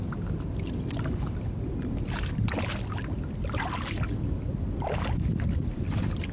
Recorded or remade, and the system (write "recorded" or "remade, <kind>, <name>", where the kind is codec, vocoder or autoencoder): recorded